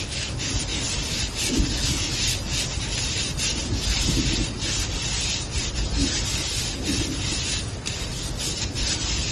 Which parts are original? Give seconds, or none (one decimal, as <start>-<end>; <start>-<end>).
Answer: 0.0-9.3